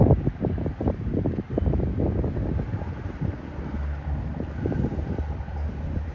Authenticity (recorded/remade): remade